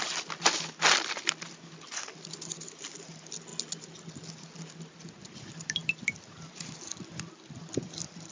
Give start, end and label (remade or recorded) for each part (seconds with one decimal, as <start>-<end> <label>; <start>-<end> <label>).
0.0-3.5 remade; 3.5-4.1 recorded; 4.1-8.3 remade